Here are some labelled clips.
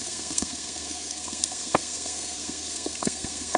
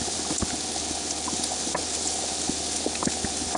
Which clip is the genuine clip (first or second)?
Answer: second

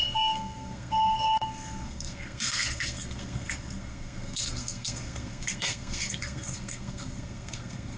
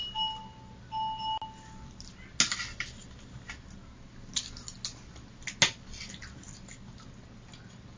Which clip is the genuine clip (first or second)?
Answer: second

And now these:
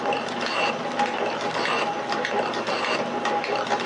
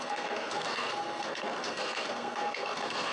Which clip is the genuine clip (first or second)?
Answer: first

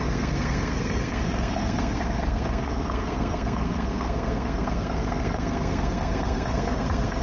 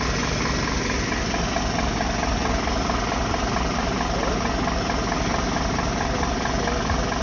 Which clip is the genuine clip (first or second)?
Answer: second